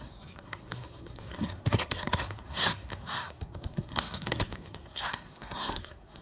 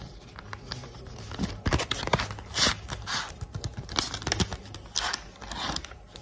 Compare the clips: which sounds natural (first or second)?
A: second